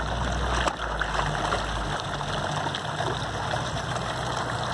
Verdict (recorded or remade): recorded